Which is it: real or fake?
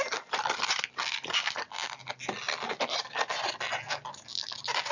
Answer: real